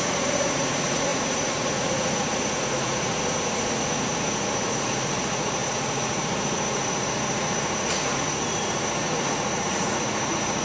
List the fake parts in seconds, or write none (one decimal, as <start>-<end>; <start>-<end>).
0.0-10.6